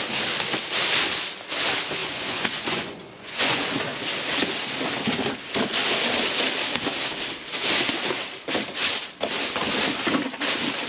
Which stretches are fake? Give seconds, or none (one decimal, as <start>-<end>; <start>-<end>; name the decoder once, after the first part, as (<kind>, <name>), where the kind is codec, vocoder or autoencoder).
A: 2.0-3.7 (vocoder, Vocos)